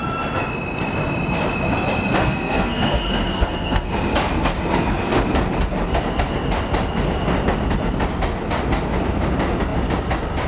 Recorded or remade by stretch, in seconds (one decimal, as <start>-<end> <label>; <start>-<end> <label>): 0.0-2.2 recorded; 2.2-3.9 remade; 3.9-10.5 recorded